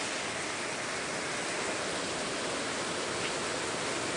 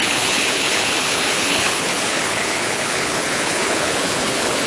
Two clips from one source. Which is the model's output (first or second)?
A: second